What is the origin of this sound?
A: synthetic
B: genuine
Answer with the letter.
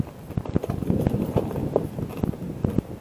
B